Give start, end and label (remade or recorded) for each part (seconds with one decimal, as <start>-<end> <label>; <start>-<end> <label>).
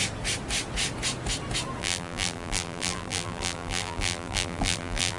0.0-1.8 recorded; 1.8-5.2 remade